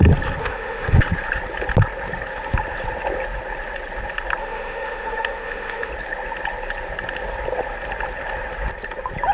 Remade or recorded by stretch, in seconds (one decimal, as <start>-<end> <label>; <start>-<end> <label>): 0.0-0.4 recorded; 0.4-1.0 remade; 1.0-4.4 recorded; 4.4-5.9 remade; 5.9-9.3 recorded